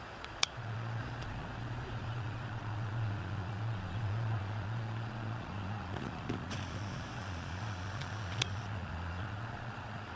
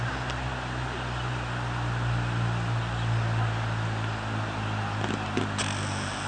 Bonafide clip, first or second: second